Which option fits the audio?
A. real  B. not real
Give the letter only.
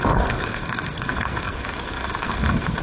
B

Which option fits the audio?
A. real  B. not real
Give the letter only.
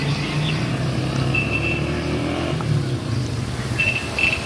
A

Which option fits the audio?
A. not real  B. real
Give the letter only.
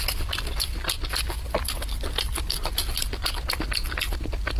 B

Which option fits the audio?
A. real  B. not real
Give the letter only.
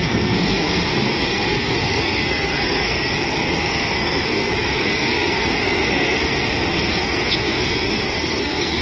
B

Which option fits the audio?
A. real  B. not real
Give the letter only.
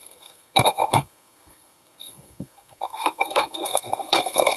B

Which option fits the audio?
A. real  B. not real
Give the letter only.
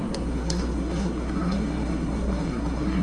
B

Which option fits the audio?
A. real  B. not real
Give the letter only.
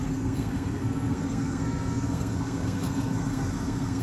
B